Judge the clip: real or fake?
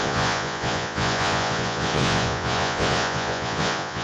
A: fake